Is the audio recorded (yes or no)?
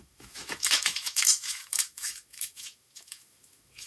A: no